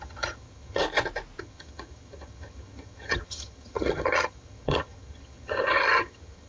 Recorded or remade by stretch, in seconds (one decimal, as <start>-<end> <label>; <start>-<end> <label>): 0.0-0.8 remade; 0.8-1.4 recorded; 1.4-6.5 remade